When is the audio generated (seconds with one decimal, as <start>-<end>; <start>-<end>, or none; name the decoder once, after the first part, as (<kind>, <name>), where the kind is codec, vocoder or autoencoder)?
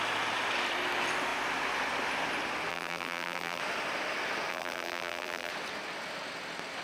2.7-3.6 (vocoder, BigVGAN v2); 4.5-5.5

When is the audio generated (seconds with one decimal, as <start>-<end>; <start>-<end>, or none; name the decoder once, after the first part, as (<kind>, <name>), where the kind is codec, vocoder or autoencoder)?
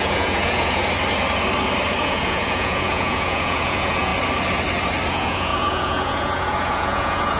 0.0-0.8 (vocoder, Vocos); 2.0-4.1; 5.1-7.4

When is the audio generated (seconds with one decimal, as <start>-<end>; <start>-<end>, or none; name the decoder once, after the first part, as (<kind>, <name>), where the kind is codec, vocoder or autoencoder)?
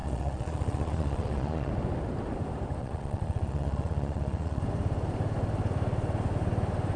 0.0-1.7 (vocoder, Vocos); 2.8-4.6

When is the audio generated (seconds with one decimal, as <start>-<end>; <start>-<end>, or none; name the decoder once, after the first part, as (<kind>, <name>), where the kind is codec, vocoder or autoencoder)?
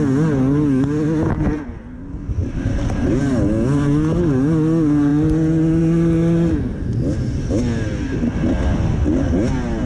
2.4-3.2 (vocoder, BigVGAN v2)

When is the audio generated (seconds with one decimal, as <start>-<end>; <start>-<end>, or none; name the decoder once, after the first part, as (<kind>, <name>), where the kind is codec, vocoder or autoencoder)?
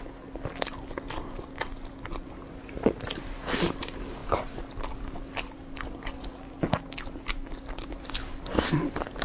none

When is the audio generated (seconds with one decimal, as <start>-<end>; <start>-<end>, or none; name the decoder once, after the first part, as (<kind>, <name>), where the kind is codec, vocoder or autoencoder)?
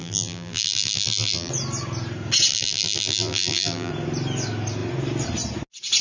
0.0-1.5 (vocoder, BigVGAN v2); 2.5-3.9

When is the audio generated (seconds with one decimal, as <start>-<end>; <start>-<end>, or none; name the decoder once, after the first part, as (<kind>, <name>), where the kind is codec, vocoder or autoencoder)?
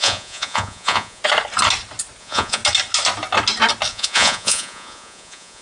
0.0-1.2 (vocoder, Vocos); 2.2-2.6; 3.9-5.6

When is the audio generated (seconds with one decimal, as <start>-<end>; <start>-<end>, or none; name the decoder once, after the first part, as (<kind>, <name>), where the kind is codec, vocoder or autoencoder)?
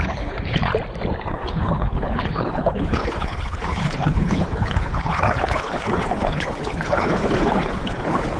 0.0-0.7 (codec, HILCodec); 1.3-8.4